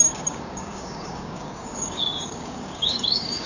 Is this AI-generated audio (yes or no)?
yes